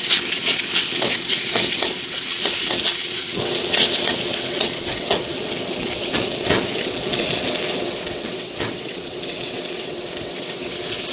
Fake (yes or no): yes